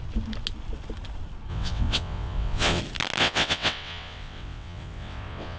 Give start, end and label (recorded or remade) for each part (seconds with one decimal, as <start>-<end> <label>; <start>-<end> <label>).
0.0-1.5 recorded; 1.5-2.8 remade; 2.8-3.2 recorded; 3.2-5.6 remade

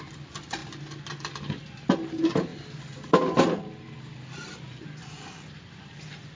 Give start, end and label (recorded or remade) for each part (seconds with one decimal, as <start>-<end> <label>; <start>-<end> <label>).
0.0-2.5 remade; 2.5-5.0 recorded; 5.0-6.4 remade

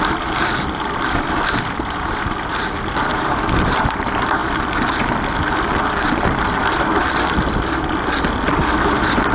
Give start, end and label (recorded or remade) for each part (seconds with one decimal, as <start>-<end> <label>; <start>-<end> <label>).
0.0-9.3 recorded

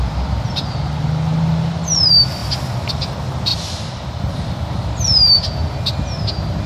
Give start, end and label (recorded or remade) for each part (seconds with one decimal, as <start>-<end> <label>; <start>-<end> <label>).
0.0-2.4 remade; 2.4-2.9 recorded; 2.9-5.6 remade; 5.6-6.3 recorded; 6.3-6.7 remade

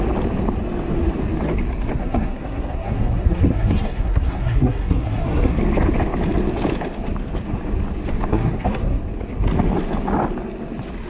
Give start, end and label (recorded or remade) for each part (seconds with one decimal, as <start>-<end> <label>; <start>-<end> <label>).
0.0-2.0 recorded; 2.0-5.6 remade; 5.6-8.3 recorded; 8.3-9.0 remade; 9.0-11.1 recorded

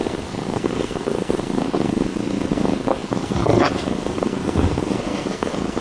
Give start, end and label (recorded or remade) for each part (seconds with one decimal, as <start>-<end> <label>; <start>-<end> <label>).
0.0-5.8 remade